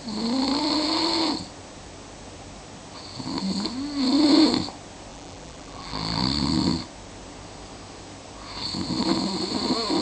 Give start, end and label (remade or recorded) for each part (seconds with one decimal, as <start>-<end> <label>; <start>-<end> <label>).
0.0-5.1 recorded; 5.1-6.2 remade; 6.2-10.0 recorded